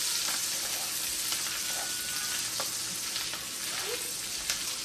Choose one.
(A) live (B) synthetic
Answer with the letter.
A